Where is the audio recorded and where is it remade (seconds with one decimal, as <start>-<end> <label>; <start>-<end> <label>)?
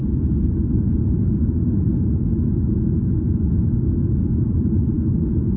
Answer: 0.0-1.6 remade; 1.6-2.7 recorded; 2.7-5.6 remade